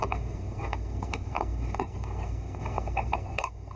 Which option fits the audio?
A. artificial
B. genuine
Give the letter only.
A